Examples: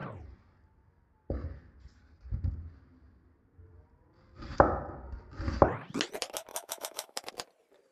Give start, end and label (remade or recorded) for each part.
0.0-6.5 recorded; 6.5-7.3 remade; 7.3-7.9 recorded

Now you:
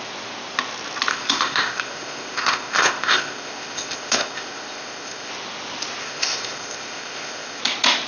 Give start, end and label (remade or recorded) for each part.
0.0-1.1 recorded; 1.1-5.3 remade; 5.3-6.0 recorded; 6.0-7.6 remade; 7.6-8.1 recorded